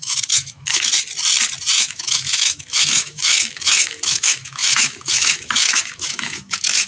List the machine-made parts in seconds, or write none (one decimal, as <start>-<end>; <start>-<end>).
0.0-0.9; 1.8-6.9